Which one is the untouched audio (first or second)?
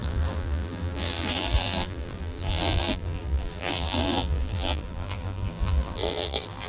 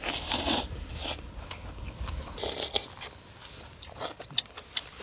second